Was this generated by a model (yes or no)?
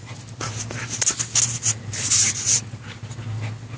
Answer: no